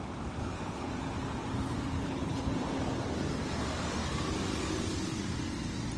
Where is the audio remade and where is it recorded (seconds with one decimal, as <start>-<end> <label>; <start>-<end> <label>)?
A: 0.0-0.4 recorded; 0.4-0.9 remade; 0.9-1.9 recorded; 1.9-2.5 remade; 2.5-6.0 recorded